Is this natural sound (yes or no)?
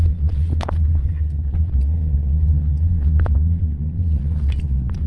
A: no